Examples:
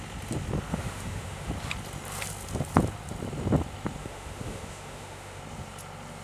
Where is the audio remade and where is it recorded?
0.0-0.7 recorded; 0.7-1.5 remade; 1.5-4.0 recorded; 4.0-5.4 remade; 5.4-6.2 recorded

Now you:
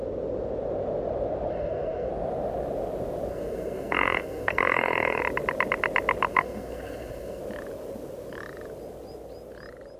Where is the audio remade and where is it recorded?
0.0-1.5 recorded; 1.5-2.1 remade; 2.1-3.3 recorded; 3.3-5.2 remade; 5.2-6.3 recorded; 6.3-7.4 remade; 7.4-10.0 recorded

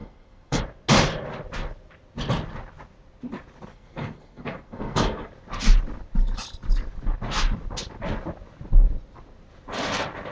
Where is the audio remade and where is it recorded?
0.0-0.6 remade; 0.6-3.7 recorded; 3.7-5.3 remade; 5.3-10.3 recorded